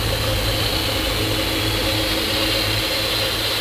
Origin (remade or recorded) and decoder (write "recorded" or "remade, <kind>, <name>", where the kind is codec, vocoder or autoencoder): recorded